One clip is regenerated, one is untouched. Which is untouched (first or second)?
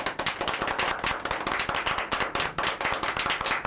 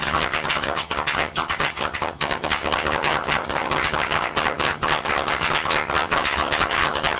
first